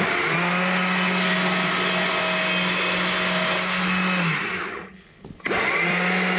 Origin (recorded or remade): recorded